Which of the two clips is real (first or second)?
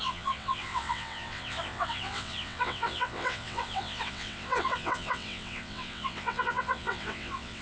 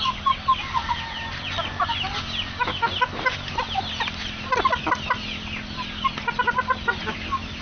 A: second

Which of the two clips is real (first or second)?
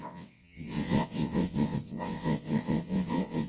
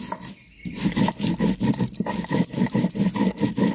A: second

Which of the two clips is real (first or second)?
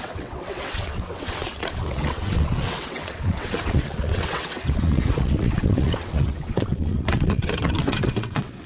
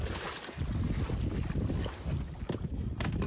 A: second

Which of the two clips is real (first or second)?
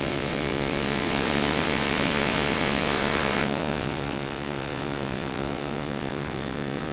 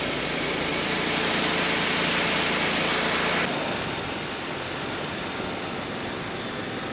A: second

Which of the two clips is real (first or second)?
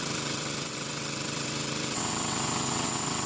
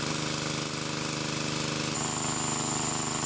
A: second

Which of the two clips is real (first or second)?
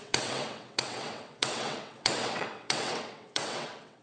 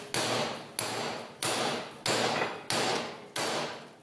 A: second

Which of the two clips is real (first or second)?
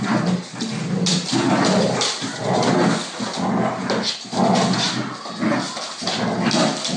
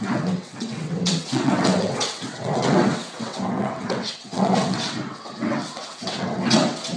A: first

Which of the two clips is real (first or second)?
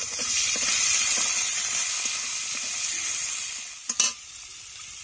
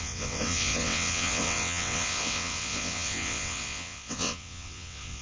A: first